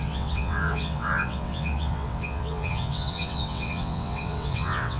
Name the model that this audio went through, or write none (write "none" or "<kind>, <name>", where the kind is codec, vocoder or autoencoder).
vocoder, WaveNeXt